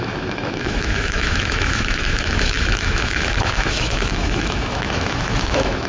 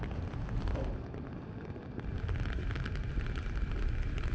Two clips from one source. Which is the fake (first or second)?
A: first